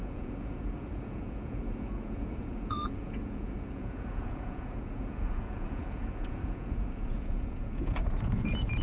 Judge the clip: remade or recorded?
remade